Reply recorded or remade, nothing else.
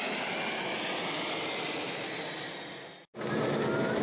recorded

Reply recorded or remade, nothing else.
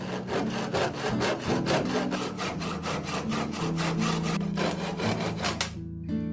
recorded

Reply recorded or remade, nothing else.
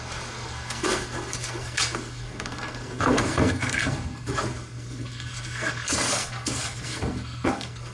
remade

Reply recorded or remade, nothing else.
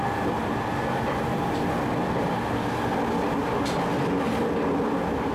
recorded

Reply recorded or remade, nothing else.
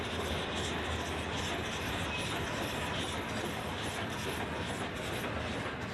recorded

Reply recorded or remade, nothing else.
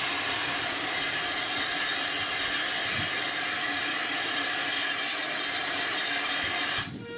recorded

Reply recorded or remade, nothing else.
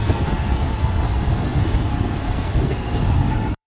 remade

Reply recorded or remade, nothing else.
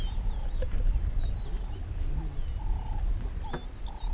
recorded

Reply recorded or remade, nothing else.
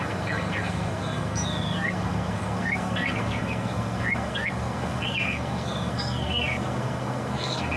remade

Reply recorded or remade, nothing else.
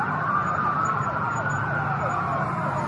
recorded